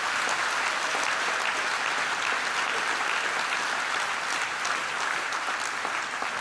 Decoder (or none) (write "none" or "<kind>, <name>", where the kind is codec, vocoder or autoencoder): none